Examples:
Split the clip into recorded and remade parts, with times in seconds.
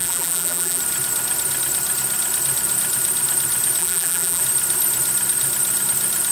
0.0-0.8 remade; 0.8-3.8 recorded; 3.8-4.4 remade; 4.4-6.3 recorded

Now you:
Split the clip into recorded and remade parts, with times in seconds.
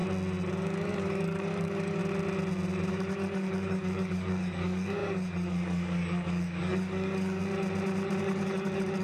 0.0-0.5 recorded; 0.5-2.0 remade; 2.0-2.9 recorded; 2.9-7.4 remade; 7.4-8.2 recorded; 8.2-9.0 remade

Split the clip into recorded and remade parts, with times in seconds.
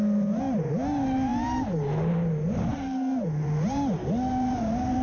0.0-5.0 recorded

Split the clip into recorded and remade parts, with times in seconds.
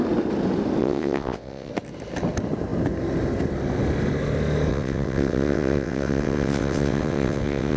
0.0-0.8 recorded; 0.8-1.7 remade; 1.7-4.7 recorded; 4.7-7.8 remade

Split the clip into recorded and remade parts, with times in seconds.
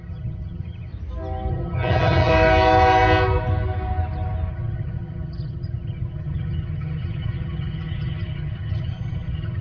0.0-0.9 remade; 0.9-1.5 recorded; 1.5-2.3 remade; 2.3-4.5 recorded; 4.5-9.6 remade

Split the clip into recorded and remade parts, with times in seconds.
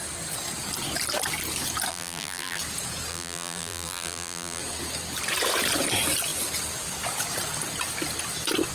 0.0-1.9 recorded; 1.9-2.6 remade; 2.6-3.1 recorded; 3.1-4.6 remade; 4.6-8.7 recorded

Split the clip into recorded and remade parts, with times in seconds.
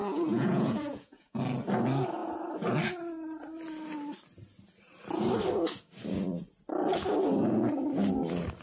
0.0-1.4 remade; 1.4-8.6 recorded